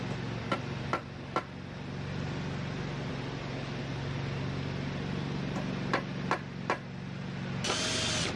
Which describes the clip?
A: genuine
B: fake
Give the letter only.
A